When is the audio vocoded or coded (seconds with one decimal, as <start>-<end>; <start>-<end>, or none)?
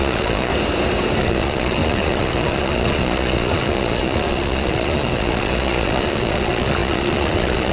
0.0-0.5; 1.2-7.7